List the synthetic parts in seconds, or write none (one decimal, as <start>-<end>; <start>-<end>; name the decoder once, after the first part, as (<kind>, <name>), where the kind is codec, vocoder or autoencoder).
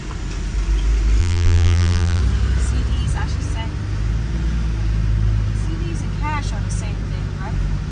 1.2-2.2 (vocoder, BigVGAN v2)